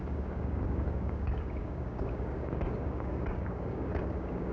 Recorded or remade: remade